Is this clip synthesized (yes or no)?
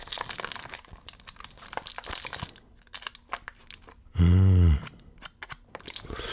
yes